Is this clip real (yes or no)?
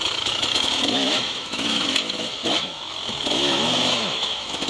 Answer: no